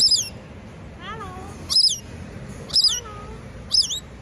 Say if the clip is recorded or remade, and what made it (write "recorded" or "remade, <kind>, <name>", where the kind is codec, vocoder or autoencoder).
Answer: recorded